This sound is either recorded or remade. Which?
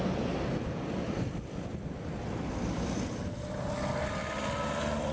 recorded